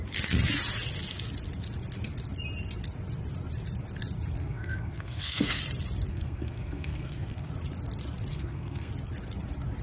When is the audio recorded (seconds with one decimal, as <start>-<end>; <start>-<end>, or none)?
0.0-4.4; 5.6-6.1; 7.5-8.3; 8.9-9.8